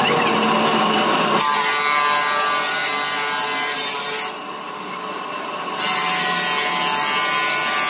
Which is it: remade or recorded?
recorded